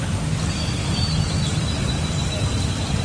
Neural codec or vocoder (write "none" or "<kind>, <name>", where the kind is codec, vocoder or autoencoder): none